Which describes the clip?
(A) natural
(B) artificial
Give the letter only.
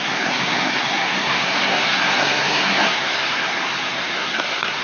B